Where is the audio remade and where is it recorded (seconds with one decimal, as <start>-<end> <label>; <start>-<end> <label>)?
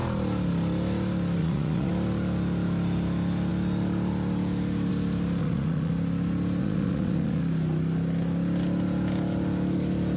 0.0-1.4 recorded; 1.4-1.9 remade; 1.9-5.4 recorded; 5.4-5.9 remade; 5.9-6.6 recorded; 6.6-7.4 remade; 7.4-10.2 recorded